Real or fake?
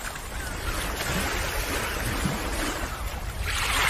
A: real